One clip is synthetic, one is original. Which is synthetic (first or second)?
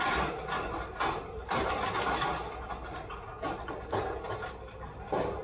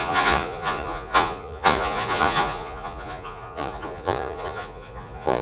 second